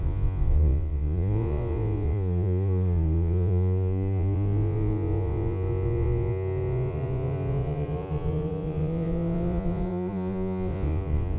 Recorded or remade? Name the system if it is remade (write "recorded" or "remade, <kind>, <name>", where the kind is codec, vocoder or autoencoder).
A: remade, vocoder, Vocos